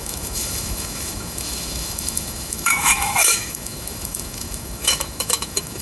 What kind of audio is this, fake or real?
fake